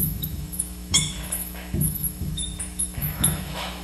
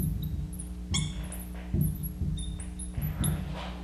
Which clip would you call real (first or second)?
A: second